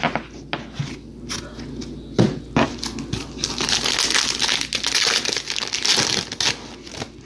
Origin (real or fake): real